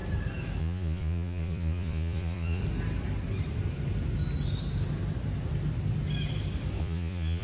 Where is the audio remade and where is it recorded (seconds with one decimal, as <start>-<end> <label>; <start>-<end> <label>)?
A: 0.0-0.6 recorded; 0.6-2.6 remade; 2.6-6.8 recorded; 6.8-7.4 remade